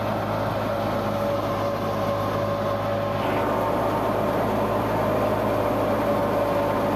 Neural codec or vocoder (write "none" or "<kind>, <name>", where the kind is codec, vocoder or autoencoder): none